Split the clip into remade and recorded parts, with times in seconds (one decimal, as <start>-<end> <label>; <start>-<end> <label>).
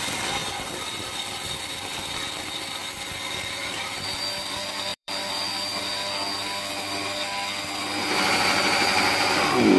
0.0-2.8 recorded; 2.8-4.3 remade; 4.3-4.9 recorded; 4.9-5.8 remade; 5.8-8.0 recorded; 8.0-9.1 remade; 9.1-9.8 recorded